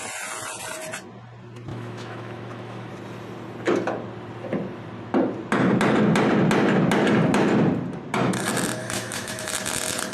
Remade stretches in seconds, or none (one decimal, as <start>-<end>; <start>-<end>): 1.7-2.9; 8.8-9.5

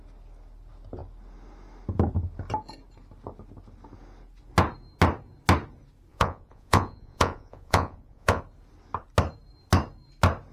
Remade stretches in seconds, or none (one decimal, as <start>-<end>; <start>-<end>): 6.1-8.4

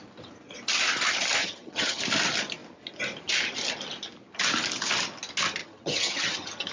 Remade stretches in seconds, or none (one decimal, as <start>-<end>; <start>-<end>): 1.4-2.0; 5.6-6.7

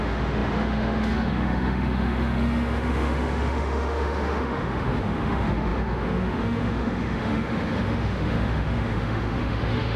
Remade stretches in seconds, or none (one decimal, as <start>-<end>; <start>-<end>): 0.0-10.0

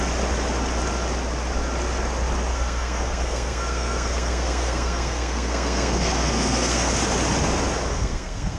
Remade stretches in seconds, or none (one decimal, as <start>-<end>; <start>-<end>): 2.5-6.9; 7.9-8.6